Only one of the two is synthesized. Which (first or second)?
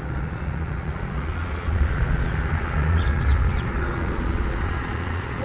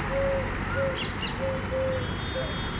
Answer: first